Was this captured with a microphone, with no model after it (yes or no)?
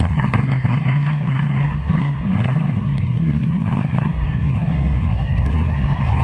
no